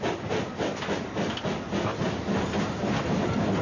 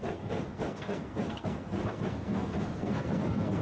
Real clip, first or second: first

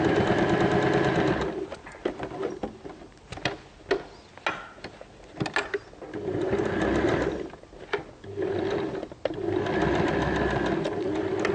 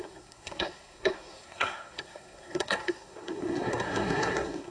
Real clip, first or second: first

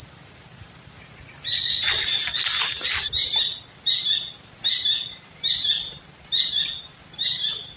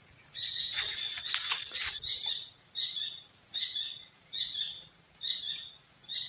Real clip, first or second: first